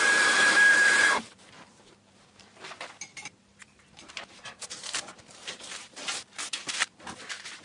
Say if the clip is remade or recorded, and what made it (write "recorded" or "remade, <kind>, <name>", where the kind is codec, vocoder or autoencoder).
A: remade, vocoder, BigVGAN v2